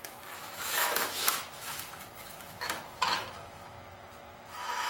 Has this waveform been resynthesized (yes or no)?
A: yes